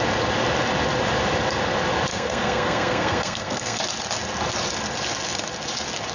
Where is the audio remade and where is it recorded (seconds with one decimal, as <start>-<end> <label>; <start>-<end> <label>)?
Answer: 0.0-2.1 recorded; 2.1-3.8 remade; 3.8-6.1 recorded